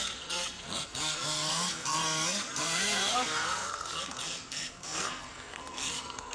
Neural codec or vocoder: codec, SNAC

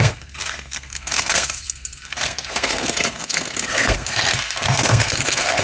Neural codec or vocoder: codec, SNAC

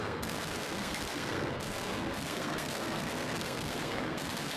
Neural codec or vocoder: codec, SNAC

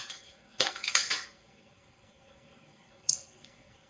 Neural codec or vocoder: codec, SNAC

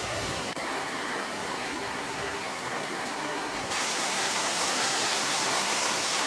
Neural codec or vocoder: codec, SNAC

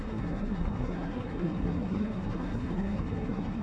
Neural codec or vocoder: codec, SNAC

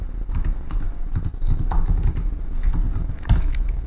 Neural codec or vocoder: none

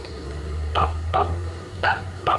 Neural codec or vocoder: codec, SNAC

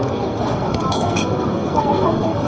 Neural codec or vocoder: codec, SNAC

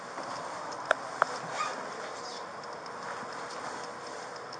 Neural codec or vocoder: none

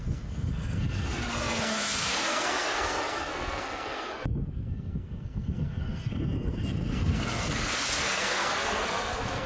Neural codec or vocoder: codec, SNAC